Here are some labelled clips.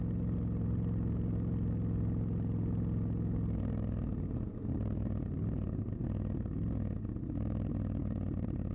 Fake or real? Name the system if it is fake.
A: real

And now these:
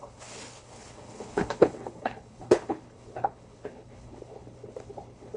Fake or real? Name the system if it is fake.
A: fake, codec, HILCodec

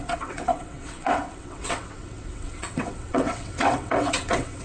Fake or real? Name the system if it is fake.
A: fake, vocoder, WaveNeXt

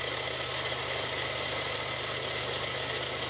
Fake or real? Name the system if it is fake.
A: real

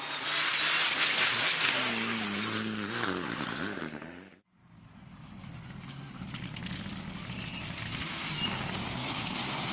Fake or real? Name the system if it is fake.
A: real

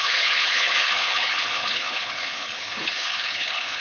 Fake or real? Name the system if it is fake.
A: fake, codec, HILCodec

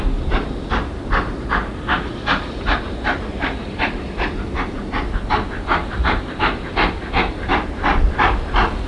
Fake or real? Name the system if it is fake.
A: fake, vocoder, BigVGAN v2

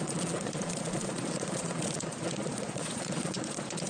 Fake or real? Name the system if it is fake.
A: fake, vocoder, Vocos